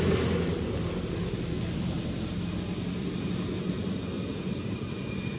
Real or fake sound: real